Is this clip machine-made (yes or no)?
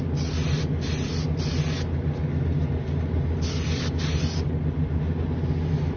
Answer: no